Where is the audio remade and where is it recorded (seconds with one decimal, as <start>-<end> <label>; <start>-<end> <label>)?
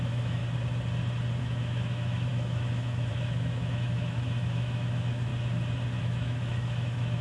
0.0-0.4 remade; 0.4-1.4 recorded; 1.4-5.3 remade; 5.3-6.0 recorded; 6.0-7.2 remade